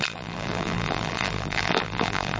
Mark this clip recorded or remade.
remade